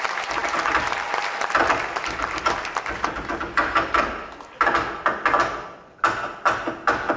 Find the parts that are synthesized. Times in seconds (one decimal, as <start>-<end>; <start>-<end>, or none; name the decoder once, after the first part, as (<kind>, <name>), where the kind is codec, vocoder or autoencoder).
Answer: none